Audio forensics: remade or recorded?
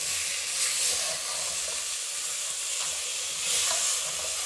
recorded